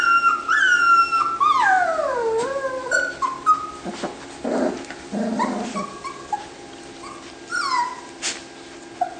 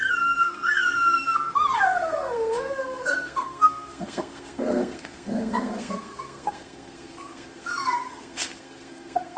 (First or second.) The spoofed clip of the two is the second